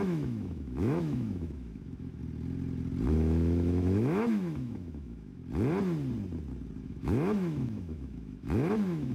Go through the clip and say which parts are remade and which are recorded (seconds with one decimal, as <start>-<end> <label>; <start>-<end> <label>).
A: 0.0-2.2 remade; 2.2-3.1 recorded; 3.1-5.4 remade; 5.4-6.8 recorded; 6.8-9.1 remade